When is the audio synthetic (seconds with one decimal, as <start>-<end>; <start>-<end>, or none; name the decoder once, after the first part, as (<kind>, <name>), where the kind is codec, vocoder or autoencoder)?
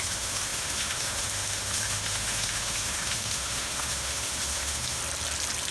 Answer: 0.0-5.0 (autoencoder, DAC-VAE)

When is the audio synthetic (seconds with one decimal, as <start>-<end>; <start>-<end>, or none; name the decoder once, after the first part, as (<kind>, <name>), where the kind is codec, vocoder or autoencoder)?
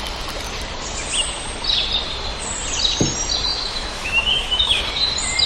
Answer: 3.5-4.8 (autoencoder, DAC-VAE)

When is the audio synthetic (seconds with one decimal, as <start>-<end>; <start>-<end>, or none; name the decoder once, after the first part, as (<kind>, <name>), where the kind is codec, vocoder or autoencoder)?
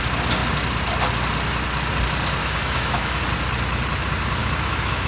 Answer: 2.4-3.2 (autoencoder, DAC-VAE); 4.4-5.1